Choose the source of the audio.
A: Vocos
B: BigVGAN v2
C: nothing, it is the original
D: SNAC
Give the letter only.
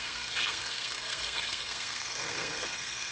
D